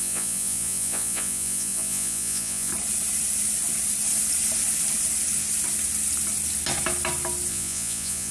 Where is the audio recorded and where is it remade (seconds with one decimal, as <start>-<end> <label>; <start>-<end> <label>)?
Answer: 0.0-2.7 remade; 2.7-7.5 recorded; 7.5-8.3 remade